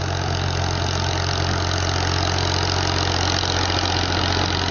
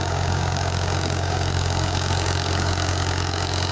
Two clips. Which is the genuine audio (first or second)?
first